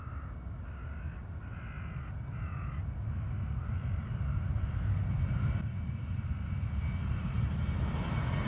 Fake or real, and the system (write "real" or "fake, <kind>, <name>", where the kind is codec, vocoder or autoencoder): real